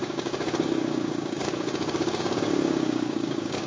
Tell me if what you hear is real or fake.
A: fake